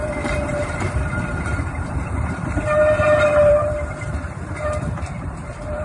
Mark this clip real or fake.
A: fake